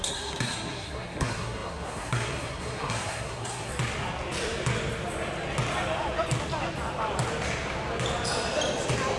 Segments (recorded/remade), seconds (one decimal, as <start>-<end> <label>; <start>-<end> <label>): 0.0-3.7 remade; 3.7-9.2 recorded